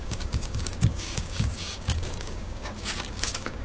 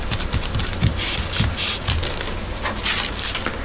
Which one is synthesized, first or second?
first